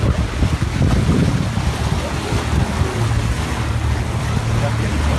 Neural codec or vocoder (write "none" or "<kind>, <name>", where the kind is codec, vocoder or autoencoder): none